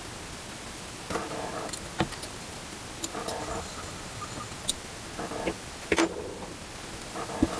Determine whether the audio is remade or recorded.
recorded